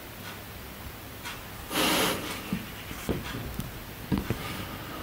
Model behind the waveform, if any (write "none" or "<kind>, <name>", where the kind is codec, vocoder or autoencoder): none